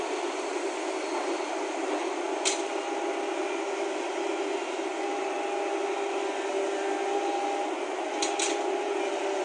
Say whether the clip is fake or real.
real